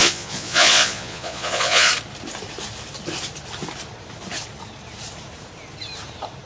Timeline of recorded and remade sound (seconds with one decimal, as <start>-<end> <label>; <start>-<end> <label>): 0.0-1.9 remade; 1.9-6.5 recorded